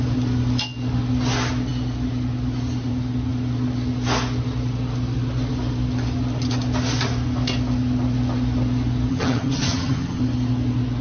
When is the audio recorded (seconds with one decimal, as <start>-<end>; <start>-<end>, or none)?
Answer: 0.0-9.1; 10.2-11.0